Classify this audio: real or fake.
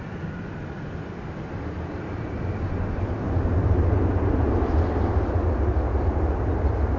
real